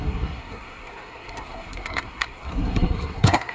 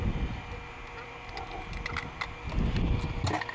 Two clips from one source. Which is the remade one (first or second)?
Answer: first